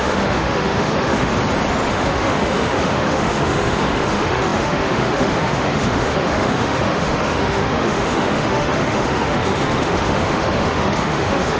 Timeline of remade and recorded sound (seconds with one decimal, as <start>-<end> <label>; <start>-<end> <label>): 0.0-1.3 remade; 1.3-1.9 recorded; 1.9-11.6 remade